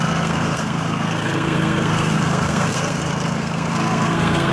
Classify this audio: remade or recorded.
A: remade